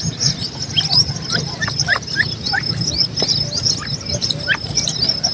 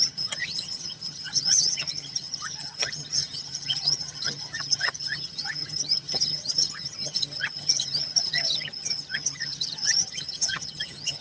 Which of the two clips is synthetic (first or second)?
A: second